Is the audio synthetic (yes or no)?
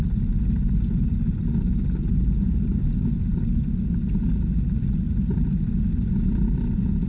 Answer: no